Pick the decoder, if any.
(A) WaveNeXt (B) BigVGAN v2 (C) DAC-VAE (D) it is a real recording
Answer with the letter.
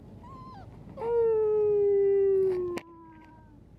D